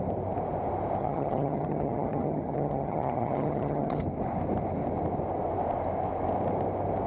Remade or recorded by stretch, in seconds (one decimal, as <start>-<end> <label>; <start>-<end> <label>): 0.0-1.0 recorded; 1.0-4.0 remade; 4.0-7.1 recorded